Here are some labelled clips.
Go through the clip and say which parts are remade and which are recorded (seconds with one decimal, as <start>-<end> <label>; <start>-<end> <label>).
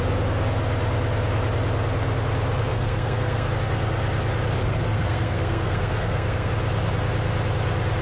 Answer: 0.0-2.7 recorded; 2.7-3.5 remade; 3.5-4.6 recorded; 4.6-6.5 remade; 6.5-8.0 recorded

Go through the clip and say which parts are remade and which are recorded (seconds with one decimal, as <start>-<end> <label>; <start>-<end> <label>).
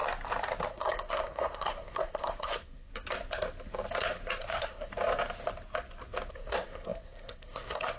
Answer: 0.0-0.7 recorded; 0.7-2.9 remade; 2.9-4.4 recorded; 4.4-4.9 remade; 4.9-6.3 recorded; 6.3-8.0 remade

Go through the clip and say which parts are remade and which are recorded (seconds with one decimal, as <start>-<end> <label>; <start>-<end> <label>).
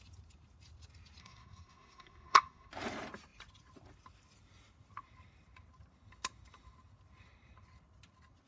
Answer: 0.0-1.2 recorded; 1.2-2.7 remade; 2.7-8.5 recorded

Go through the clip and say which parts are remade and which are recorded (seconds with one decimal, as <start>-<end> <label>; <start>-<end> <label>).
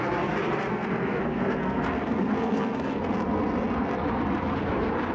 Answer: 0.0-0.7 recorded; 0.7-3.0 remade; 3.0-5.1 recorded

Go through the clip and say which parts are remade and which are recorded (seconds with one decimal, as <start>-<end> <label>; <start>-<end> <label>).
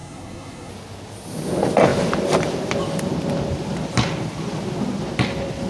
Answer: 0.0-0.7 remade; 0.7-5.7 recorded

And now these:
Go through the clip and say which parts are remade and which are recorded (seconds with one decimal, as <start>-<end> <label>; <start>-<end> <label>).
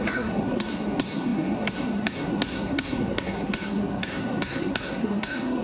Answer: 0.0-5.6 remade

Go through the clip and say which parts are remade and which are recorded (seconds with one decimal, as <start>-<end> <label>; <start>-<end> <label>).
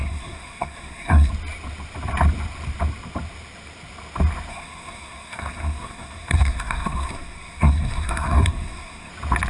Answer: 0.0-1.3 remade; 1.3-4.5 recorded; 4.5-9.1 remade; 9.1-9.5 recorded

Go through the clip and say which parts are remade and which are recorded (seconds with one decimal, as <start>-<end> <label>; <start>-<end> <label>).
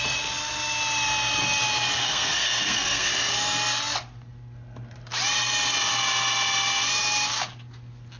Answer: 0.0-2.0 recorded; 2.0-3.1 remade; 3.1-8.2 recorded